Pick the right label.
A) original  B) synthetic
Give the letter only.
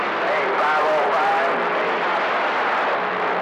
A